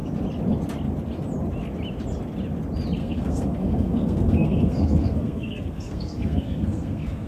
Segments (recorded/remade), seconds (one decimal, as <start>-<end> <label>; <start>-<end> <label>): 0.0-3.0 recorded; 3.0-7.3 remade